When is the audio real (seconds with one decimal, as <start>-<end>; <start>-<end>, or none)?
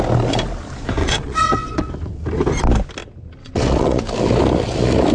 0.0-1.0; 1.9-3.4; 4.0-5.1